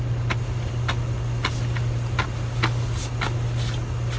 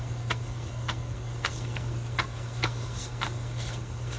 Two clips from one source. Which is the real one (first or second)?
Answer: first